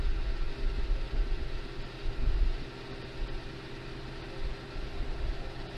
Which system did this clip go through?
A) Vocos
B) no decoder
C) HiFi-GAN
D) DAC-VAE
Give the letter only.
B